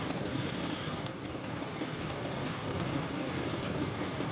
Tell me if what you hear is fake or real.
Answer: fake